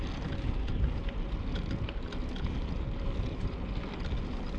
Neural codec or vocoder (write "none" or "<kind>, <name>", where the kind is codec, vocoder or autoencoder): none